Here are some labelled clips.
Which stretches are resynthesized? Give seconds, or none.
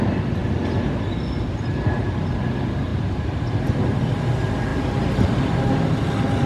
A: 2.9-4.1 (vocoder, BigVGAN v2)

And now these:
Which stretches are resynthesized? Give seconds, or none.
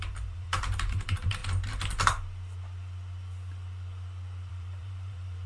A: 0.0-1.4 (vocoder, BigVGAN v2); 4.5-5.5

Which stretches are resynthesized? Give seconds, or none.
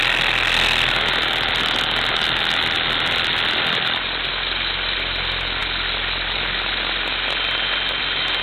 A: none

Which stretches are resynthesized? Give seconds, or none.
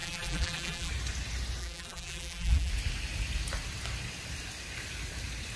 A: 0.0-0.9 (vocoder, BigVGAN v2); 1.6-2.7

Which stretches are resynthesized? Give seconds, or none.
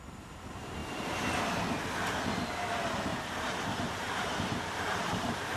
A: 3.1-5.6 (vocoder, BigVGAN v2)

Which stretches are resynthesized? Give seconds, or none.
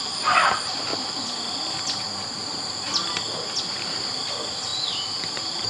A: 0.0-0.9 (vocoder, BigVGAN v2); 4.3-5.7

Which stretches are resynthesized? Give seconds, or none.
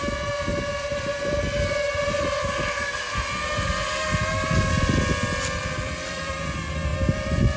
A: 0.9-2.4 (vocoder, BigVGAN v2); 5.6-6.3